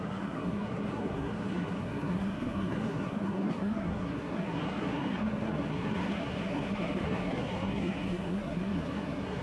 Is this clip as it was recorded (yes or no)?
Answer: no